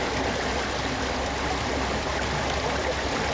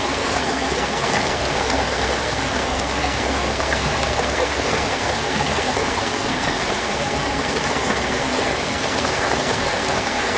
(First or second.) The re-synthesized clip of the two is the second